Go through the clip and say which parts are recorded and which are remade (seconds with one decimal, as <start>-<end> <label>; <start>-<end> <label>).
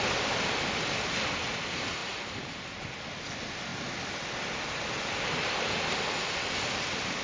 0.0-2.0 recorded; 2.0-2.8 remade; 2.8-7.2 recorded